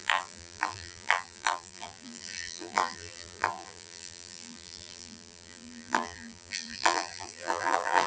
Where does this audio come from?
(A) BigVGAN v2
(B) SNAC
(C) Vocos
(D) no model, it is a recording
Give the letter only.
A